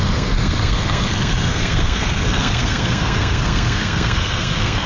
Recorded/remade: remade